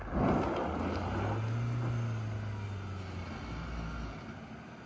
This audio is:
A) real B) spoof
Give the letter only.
A